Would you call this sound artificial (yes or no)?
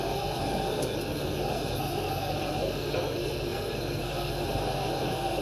yes